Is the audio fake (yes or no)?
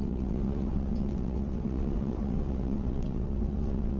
yes